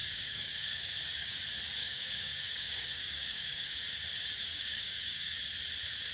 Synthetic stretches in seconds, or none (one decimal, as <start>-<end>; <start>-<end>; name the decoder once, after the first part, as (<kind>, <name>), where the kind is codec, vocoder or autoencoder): 0.0-1.4 (codec, DAC); 1.8-3.8; 4.5-5.4